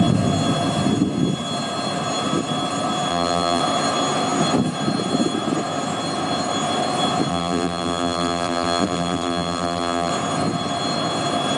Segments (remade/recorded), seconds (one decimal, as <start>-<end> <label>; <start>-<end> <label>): 0.0-3.1 recorded; 3.1-3.6 remade; 3.6-7.3 recorded; 7.3-10.1 remade; 10.1-11.6 recorded